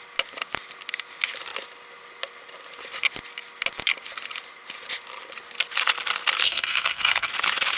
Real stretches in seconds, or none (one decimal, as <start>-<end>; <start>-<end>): 0.0-6.5; 7.3-7.8